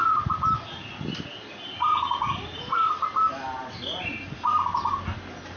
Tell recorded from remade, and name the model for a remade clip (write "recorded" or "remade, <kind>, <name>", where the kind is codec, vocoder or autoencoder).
recorded